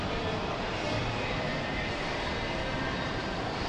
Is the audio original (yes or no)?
no